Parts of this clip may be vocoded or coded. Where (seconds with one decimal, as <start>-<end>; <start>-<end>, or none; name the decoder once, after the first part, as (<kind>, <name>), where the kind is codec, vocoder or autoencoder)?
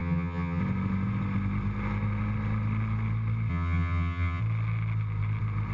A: 0.0-0.6 (vocoder, HiFi-GAN); 3.5-4.4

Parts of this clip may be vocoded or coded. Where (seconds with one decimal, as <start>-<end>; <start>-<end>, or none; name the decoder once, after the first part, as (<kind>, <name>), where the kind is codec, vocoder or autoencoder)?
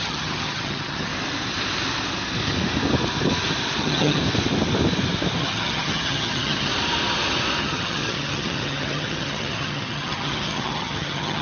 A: 0.0-1.1 (vocoder, HiFi-GAN); 3.8-4.2; 5.4-6.7; 7.6-11.4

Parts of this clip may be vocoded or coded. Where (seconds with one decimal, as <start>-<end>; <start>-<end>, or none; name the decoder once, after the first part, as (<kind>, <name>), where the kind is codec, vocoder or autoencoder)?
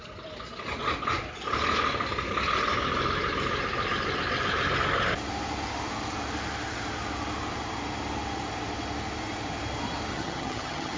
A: 10.1-11.0 (vocoder, HiFi-GAN)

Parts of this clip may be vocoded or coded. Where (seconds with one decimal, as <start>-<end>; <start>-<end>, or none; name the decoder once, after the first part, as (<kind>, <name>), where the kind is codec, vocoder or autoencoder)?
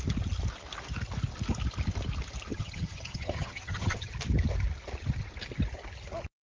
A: 2.5-4.1 (vocoder, HiFi-GAN)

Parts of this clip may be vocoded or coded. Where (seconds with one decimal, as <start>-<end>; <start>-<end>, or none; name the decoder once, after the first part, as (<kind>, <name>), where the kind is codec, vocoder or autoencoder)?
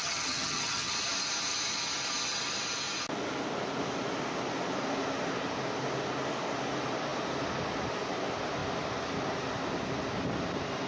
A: 0.0-0.9 (vocoder, HiFi-GAN)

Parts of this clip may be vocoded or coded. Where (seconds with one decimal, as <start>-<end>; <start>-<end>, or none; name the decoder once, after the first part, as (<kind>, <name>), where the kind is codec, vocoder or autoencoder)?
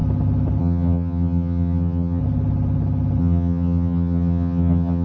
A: 0.6-2.2 (vocoder, HiFi-GAN); 3.2-5.0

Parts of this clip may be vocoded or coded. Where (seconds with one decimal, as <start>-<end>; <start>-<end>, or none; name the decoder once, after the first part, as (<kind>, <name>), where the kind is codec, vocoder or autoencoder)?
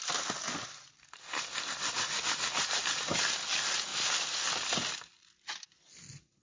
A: none